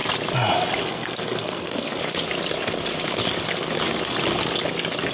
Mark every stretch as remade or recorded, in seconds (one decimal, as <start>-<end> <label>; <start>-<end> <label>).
0.0-0.8 recorded; 0.8-2.0 remade; 2.0-5.1 recorded